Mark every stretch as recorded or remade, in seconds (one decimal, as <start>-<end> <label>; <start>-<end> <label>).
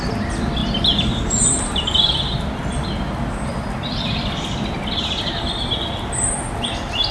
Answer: 0.0-7.1 remade